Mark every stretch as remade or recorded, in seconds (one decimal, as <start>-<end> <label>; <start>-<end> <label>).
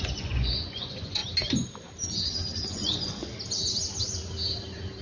0.0-1.2 remade; 1.2-2.7 recorded; 2.7-3.2 remade; 3.2-5.0 recorded